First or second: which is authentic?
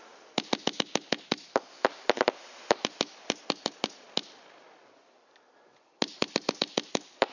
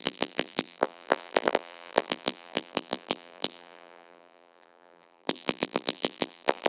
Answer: first